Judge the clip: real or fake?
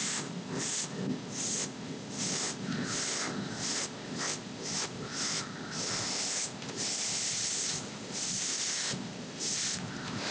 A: fake